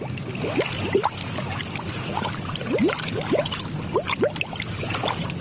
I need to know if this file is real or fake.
real